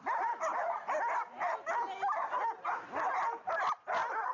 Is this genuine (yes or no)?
yes